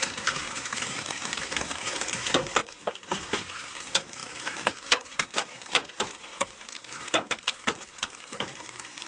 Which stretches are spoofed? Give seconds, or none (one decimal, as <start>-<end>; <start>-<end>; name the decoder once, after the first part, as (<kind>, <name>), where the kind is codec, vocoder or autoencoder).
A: 0.0-9.1 (codec, SNAC)